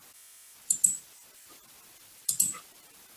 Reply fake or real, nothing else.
real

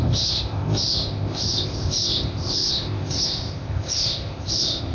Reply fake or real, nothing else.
fake